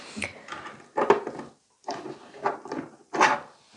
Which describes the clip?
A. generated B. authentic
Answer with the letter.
A